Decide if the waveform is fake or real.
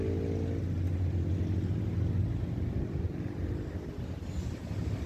real